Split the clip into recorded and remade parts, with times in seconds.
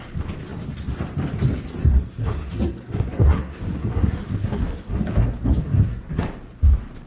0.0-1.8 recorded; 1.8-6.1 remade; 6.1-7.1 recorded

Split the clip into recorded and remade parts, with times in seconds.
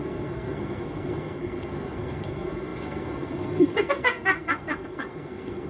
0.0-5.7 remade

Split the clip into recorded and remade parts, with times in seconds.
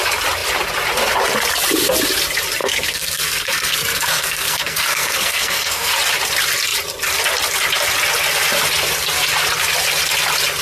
0.0-2.6 recorded; 2.6-5.9 remade; 5.9-10.6 recorded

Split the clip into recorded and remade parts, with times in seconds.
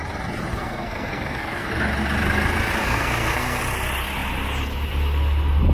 0.0-0.5 recorded; 0.5-1.7 remade; 1.7-2.8 recorded; 2.8-3.6 remade; 3.6-5.7 recorded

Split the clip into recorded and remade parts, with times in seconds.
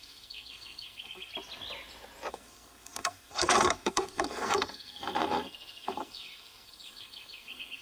0.0-1.3 remade; 1.3-2.3 recorded; 2.3-7.8 remade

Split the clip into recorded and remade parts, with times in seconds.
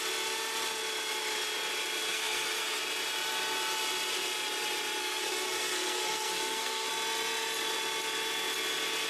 0.0-2.1 recorded; 2.1-2.8 remade; 2.8-5.0 recorded; 5.0-6.9 remade; 6.9-9.1 recorded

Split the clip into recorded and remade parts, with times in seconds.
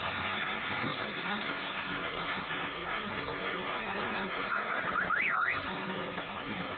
0.0-4.8 remade; 4.8-5.3 recorded; 5.3-6.8 remade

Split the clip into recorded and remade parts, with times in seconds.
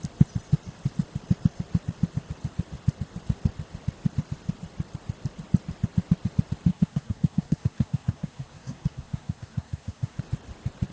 0.0-6.7 recorded; 6.7-10.2 remade; 10.2-10.9 recorded